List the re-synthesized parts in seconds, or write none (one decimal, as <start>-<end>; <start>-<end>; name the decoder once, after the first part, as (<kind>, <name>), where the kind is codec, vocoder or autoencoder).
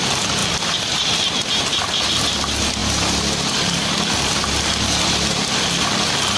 none